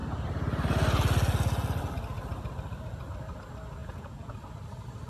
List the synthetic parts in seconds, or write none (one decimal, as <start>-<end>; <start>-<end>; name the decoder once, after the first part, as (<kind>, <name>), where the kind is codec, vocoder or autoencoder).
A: 3.8-4.3 (vocoder, Vocos)